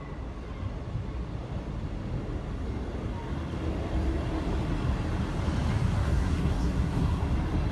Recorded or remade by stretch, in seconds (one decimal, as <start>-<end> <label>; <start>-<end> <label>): 0.0-6.0 recorded; 6.0-7.3 remade; 7.3-7.7 recorded